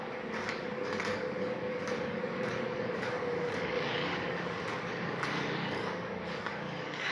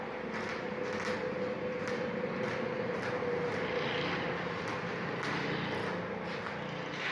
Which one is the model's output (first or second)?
first